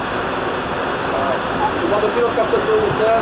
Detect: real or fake real